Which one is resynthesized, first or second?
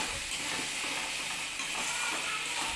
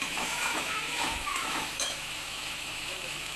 second